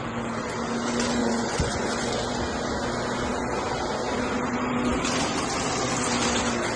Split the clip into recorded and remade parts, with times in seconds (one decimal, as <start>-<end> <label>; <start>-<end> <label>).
0.0-1.2 recorded; 1.2-2.1 remade; 2.1-6.8 recorded